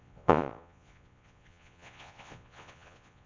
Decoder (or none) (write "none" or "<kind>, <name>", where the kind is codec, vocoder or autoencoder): vocoder, Vocos